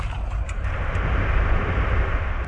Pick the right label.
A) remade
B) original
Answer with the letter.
A